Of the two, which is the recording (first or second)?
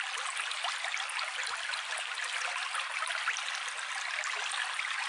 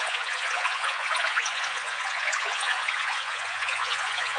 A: first